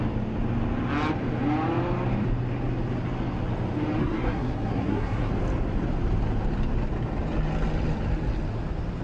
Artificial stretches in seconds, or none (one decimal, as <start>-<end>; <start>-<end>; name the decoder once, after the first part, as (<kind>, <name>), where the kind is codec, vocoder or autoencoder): 4.0-5.3 (codec, SNAC)